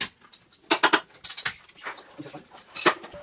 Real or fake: real